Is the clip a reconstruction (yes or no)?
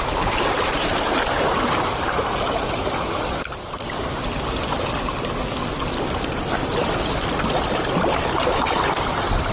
no